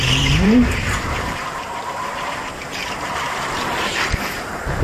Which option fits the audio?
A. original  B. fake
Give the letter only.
B